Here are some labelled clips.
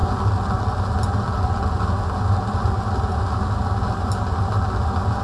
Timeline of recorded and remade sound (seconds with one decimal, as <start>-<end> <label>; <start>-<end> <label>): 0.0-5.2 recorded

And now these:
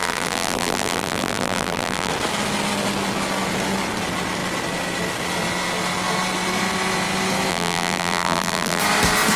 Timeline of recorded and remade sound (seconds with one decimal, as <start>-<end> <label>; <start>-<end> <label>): 0.0-2.1 remade; 2.1-7.5 recorded; 7.5-8.8 remade; 8.8-9.4 recorded

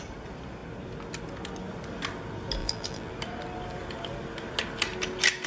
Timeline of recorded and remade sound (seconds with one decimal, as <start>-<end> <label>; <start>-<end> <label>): 0.0-2.6 recorded; 2.6-3.1 remade; 3.1-5.5 recorded

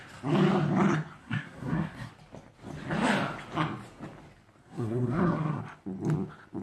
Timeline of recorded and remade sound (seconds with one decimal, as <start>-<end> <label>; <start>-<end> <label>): 0.0-1.2 recorded; 1.2-2.1 remade; 2.1-4.6 recorded; 4.6-5.6 remade; 5.6-6.6 recorded

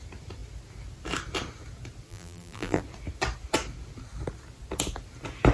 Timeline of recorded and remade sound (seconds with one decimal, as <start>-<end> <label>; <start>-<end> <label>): 0.0-2.1 recorded; 2.1-2.8 remade; 2.8-5.5 recorded